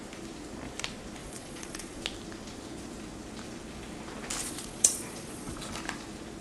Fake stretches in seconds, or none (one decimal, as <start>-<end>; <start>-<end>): 1.2-2.0; 4.4-5.6